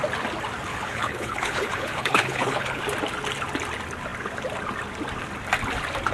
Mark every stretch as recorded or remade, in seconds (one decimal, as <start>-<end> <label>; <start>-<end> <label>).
0.0-0.7 recorded; 0.7-2.8 remade; 2.8-6.1 recorded